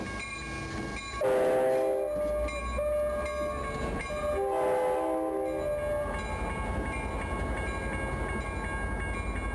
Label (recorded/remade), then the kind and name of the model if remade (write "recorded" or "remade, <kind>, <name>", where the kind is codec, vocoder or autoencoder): recorded